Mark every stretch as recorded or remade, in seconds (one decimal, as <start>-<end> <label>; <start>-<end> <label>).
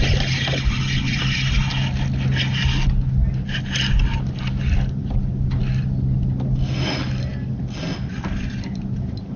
0.0-9.4 recorded